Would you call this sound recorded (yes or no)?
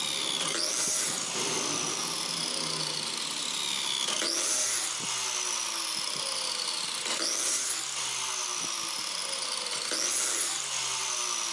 yes